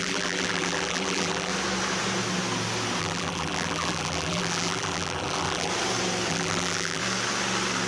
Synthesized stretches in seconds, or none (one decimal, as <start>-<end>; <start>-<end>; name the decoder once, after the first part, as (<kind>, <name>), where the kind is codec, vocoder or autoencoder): 0.0-1.5 (vocoder, BigVGAN v2); 3.0-5.7; 6.3-7.0